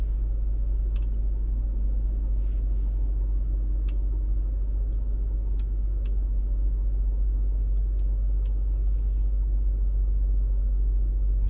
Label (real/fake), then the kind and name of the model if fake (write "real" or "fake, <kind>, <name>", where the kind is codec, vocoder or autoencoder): real